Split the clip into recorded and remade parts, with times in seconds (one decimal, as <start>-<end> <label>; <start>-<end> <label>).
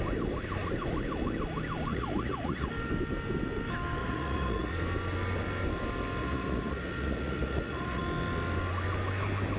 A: 0.0-1.9 recorded; 1.9-2.7 remade; 2.7-4.0 recorded; 4.0-4.7 remade; 4.7-6.2 recorded; 6.2-8.0 remade; 8.0-9.6 recorded